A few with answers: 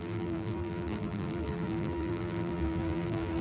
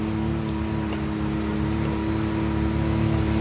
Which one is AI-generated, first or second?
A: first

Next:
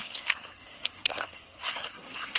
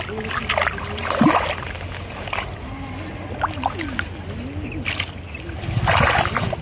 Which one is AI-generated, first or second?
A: first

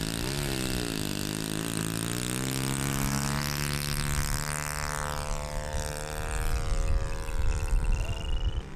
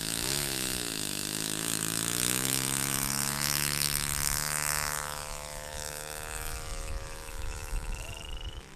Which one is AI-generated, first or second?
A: second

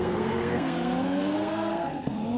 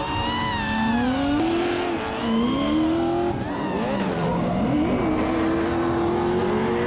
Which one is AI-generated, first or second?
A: first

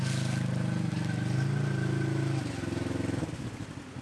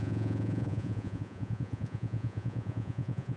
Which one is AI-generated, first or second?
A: second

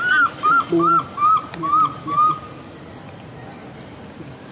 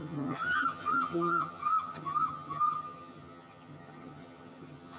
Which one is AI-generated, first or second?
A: second